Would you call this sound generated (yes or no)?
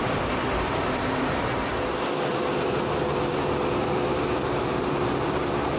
yes